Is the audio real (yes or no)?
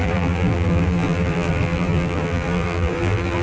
no